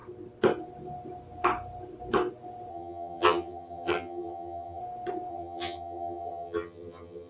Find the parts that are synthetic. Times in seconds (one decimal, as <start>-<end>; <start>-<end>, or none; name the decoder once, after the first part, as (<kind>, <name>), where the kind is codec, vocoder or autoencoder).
2.7-4.8 (vocoder, HiFi-GAN); 5.3-7.3